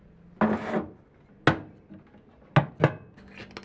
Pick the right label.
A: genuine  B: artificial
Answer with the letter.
A